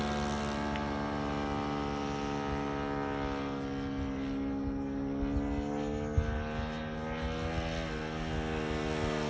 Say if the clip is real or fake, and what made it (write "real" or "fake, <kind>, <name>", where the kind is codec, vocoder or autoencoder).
real